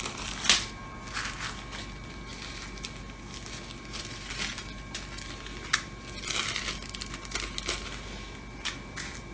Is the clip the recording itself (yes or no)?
yes